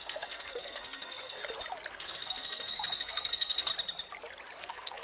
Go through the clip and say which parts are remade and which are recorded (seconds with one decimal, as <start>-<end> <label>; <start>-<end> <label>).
0.0-1.4 remade; 1.4-1.9 recorded; 1.9-3.7 remade; 3.7-4.6 recorded; 4.6-5.0 remade